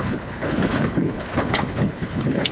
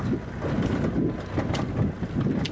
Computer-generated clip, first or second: first